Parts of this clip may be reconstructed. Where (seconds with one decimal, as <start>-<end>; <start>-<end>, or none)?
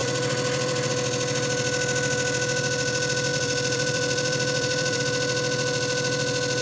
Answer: 0.0-0.9; 3.3-5.0